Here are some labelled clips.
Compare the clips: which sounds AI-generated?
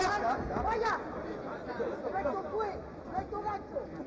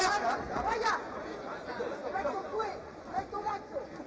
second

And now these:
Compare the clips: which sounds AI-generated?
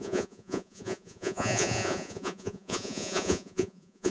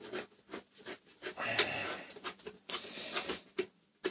first